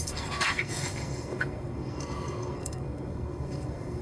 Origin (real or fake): fake